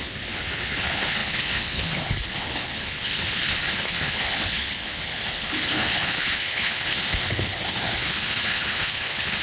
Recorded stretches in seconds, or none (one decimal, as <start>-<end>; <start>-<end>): none